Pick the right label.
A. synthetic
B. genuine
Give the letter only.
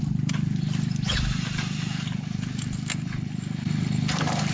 B